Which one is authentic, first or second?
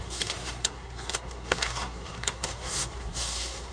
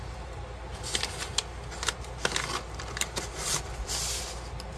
second